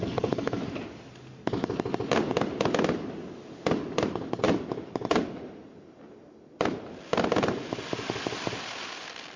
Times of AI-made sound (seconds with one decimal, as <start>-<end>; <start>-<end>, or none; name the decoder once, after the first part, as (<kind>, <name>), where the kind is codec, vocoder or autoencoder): 0.0-0.6 (codec, SNAC)